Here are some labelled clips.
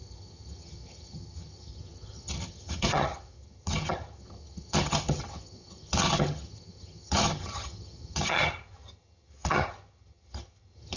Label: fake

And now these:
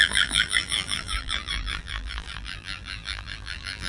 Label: fake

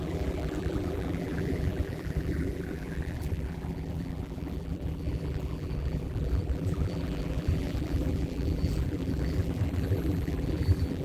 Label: fake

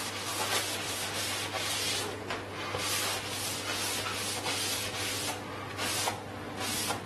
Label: real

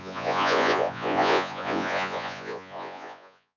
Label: fake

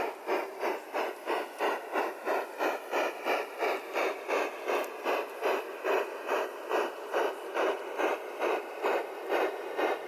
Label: real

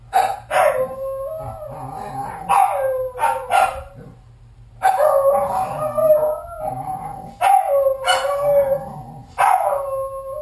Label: real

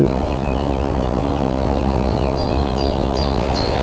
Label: fake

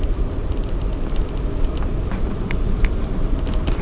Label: fake